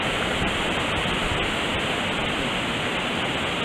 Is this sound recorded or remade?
recorded